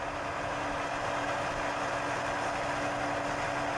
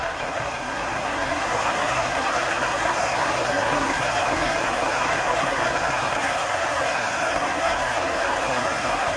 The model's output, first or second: second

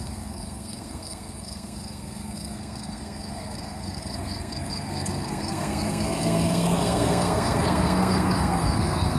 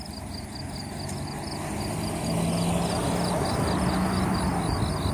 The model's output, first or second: first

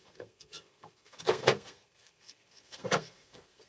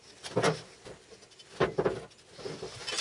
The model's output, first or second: first